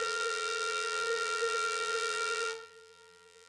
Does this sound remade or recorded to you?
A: remade